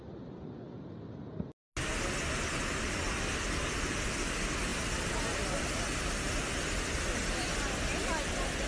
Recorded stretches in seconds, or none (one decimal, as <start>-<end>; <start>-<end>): 0.0-8.7